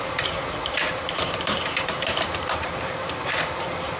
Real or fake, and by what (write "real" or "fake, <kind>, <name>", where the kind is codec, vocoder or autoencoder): fake, vocoder, BigVGAN v2